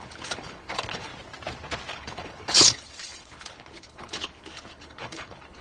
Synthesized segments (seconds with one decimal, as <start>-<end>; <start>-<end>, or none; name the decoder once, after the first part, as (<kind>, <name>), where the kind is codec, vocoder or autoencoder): 0.0-1.1 (codec, HILCodec); 1.9-5.6

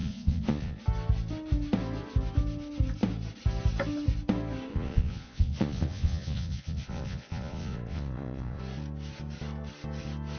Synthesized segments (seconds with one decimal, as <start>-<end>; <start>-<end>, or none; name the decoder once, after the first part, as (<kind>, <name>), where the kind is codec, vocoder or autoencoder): 0.0-0.8 (vocoder, Vocos); 4.7-8.6

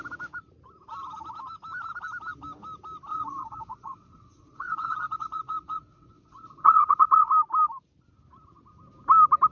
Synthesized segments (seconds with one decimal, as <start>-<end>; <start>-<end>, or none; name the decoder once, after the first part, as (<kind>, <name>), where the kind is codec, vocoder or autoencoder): 3.1-7.3 (vocoder, WaveNeXt)

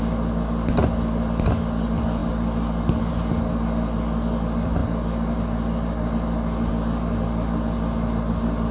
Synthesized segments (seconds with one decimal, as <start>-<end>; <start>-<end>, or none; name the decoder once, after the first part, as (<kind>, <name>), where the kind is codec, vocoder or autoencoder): none

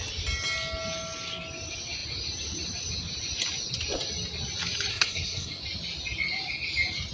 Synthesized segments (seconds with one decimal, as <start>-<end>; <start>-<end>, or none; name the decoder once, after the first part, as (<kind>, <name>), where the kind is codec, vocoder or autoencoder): 4.9-5.6 (codec, SNAC)

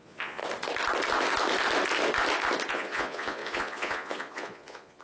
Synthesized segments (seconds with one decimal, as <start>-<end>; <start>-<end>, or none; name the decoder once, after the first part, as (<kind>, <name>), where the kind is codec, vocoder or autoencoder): 0.0-0.4 (vocoder, Vocos); 2.7-5.0